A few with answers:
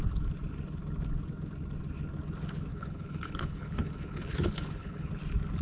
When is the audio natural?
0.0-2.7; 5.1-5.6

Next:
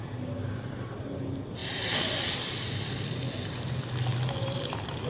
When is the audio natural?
0.0-1.6; 3.1-4.1

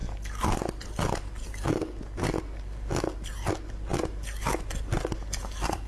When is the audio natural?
0.0-5.9